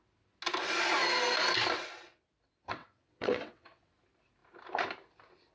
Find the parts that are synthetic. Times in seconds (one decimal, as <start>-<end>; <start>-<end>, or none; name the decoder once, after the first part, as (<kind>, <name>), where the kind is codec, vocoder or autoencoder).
2.8-3.9 (vocoder, WaveNeXt)